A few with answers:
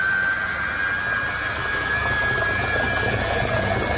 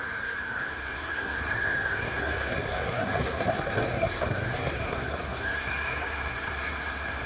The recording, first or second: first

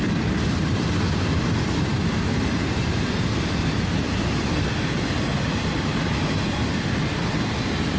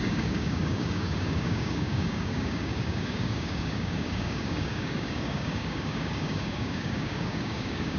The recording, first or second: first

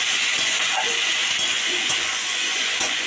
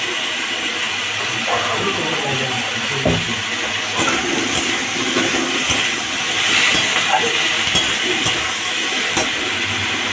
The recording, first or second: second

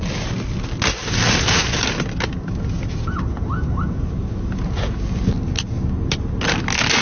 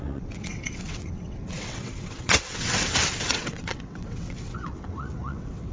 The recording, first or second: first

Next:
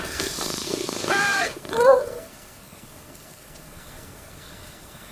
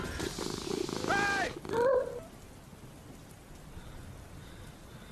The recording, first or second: second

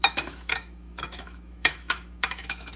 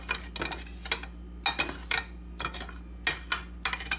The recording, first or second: second